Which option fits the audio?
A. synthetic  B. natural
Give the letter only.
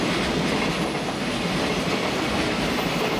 B